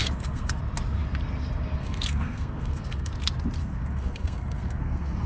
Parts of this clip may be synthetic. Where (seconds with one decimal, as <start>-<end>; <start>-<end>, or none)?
0.0-0.6; 1.8-3.1; 3.6-5.3